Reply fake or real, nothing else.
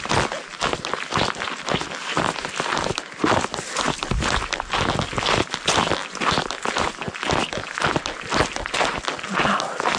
real